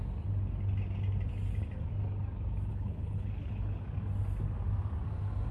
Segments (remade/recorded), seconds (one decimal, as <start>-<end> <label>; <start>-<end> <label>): 0.0-2.7 recorded; 2.7-3.8 remade; 3.8-5.5 recorded